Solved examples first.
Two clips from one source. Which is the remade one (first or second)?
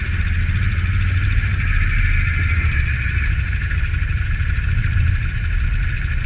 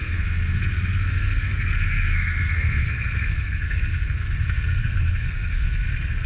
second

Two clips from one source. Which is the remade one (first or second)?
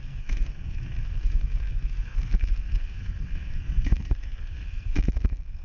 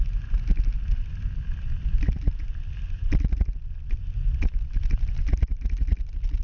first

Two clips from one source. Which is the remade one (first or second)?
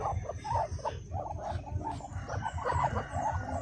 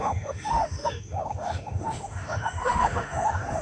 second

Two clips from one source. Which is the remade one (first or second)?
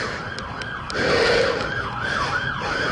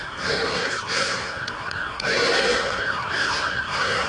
second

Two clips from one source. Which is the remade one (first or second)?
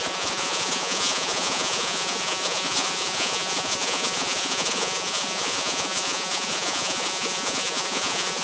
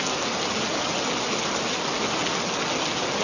first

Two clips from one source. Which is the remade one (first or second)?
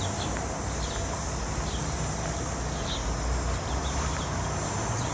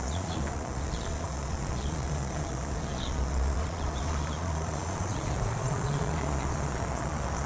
second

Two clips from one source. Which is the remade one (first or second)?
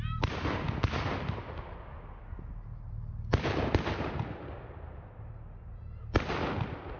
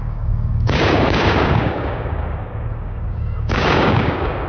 second